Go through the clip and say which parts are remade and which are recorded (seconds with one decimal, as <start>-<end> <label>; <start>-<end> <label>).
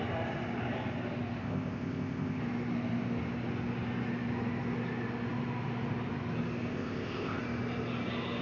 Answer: 0.0-1.4 recorded; 1.4-2.4 remade; 2.4-6.7 recorded; 6.7-7.4 remade; 7.4-8.4 recorded